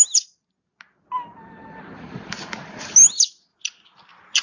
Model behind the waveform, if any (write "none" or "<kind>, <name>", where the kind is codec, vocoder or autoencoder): none